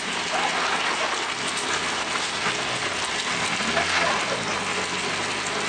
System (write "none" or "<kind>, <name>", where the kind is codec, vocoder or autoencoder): none